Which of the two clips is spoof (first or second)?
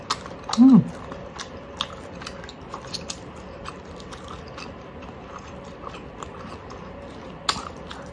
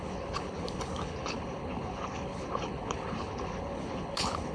second